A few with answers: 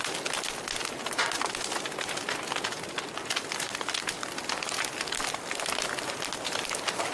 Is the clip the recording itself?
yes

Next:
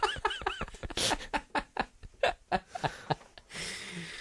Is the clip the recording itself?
yes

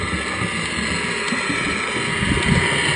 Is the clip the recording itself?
yes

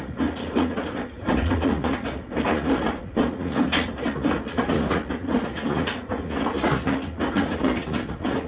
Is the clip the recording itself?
no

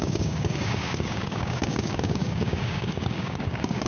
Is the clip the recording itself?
no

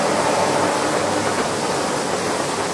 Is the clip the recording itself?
yes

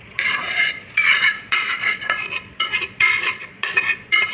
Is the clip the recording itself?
no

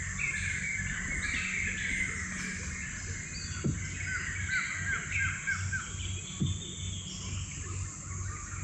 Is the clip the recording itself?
yes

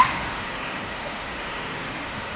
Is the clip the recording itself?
no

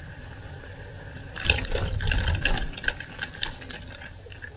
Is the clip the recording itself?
yes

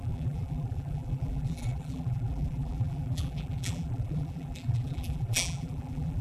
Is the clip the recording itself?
no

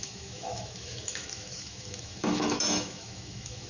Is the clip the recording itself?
no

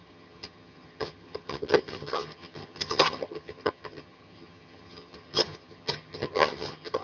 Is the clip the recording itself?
no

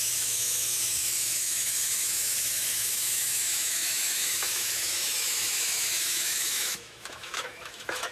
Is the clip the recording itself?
no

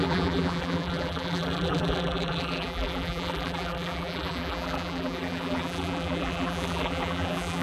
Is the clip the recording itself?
no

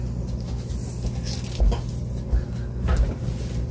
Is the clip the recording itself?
yes